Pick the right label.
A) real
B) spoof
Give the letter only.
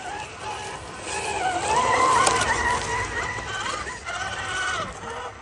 A